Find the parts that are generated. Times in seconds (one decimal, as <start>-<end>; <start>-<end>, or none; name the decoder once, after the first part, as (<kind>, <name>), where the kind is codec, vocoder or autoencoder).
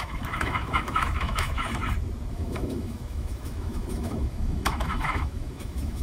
0.0-1.8 (autoencoder, DAC-VAE); 2.3-6.0